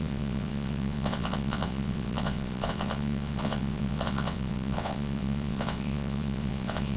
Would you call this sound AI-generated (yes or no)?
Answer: yes